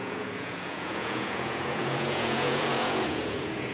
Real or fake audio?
fake